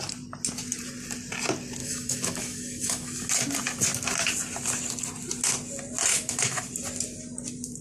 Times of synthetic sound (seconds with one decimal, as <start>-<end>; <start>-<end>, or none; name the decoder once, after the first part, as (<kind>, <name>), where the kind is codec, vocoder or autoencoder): 1.8-3.3 (autoencoder, DAC-VAE); 6.1-6.7